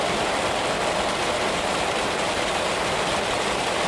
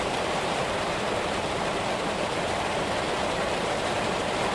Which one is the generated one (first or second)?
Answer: second